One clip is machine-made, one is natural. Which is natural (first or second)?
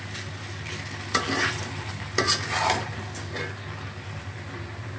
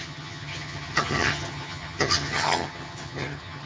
first